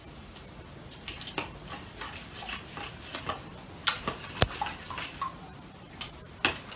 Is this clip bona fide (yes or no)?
yes